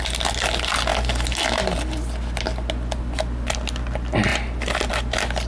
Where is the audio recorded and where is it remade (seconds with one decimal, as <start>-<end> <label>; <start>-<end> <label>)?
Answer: 0.0-5.5 recorded